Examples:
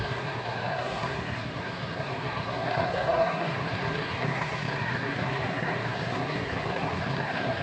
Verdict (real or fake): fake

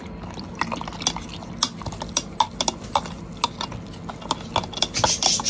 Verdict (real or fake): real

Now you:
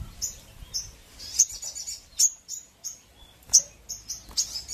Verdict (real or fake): real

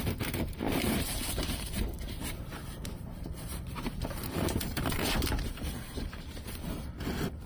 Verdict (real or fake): fake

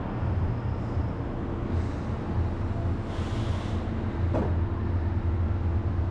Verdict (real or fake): real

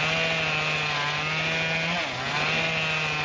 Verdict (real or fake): real